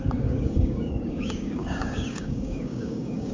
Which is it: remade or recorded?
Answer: remade